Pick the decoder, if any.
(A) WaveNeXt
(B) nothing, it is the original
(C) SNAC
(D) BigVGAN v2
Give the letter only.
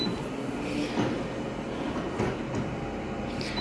B